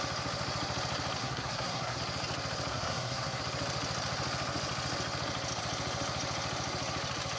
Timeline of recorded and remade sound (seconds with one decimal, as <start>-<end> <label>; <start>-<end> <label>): 0.0-1.2 recorded; 1.2-2.0 remade; 2.0-2.7 recorded; 2.7-3.4 remade; 3.4-7.4 recorded